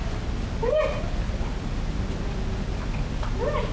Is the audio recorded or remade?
recorded